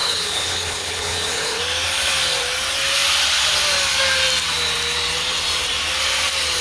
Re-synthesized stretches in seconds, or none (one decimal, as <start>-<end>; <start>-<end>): 0.0-1.6